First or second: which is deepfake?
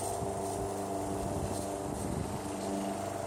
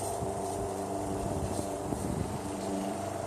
second